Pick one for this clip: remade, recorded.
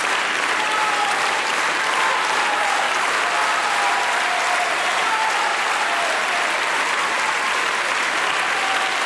recorded